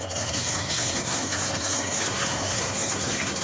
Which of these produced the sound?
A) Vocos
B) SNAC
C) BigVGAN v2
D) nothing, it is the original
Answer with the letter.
B